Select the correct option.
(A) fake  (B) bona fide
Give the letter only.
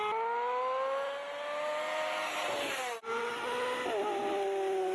B